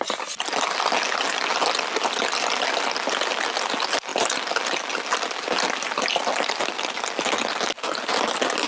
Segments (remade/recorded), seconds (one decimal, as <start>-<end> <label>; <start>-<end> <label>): 0.0-8.7 recorded